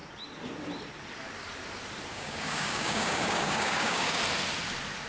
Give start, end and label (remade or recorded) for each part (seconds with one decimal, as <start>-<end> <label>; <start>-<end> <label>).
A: 0.0-2.1 recorded; 2.1-4.2 remade; 4.2-5.1 recorded

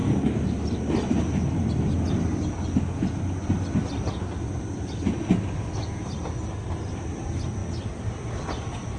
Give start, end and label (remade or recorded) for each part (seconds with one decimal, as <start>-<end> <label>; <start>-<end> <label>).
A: 0.0-9.0 recorded

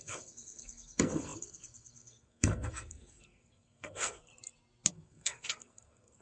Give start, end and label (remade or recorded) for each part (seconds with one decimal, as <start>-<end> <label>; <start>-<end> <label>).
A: 0.0-4.3 remade; 4.3-4.9 recorded; 4.9-6.2 remade

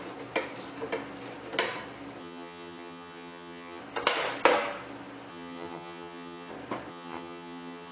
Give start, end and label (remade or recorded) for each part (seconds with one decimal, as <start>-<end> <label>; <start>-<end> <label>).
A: 0.0-2.2 recorded; 2.2-3.8 remade; 3.8-5.3 recorded; 5.3-6.5 remade; 6.5-6.9 recorded; 6.9-7.9 remade

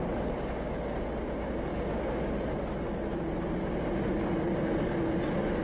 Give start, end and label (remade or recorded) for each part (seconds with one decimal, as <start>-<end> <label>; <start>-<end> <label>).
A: 0.0-5.6 recorded

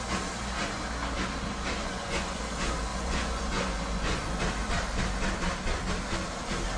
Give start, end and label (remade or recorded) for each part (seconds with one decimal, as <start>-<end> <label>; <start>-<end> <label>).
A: 0.0-1.8 recorded; 1.8-2.4 remade; 2.4-2.9 recorded; 2.9-4.4 remade; 4.4-6.8 recorded